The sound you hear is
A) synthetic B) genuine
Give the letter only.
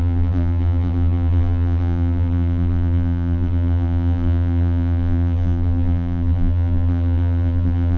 A